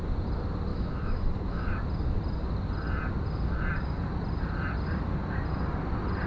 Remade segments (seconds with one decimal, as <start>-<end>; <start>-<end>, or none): 0.7-1.7